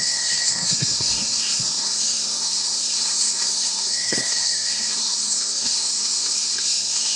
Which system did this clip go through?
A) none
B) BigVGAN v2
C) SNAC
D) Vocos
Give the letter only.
C